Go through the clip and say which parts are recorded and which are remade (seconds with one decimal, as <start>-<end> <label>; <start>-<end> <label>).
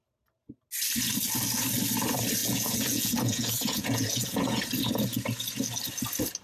0.0-2.4 recorded; 2.4-4.6 remade; 4.6-6.4 recorded